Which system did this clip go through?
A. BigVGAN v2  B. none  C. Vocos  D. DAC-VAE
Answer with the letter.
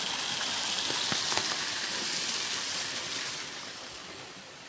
B